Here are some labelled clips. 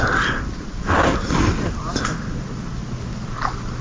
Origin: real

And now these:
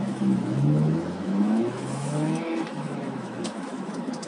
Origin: fake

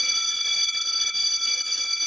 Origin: fake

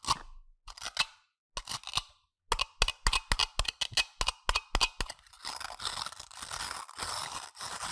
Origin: real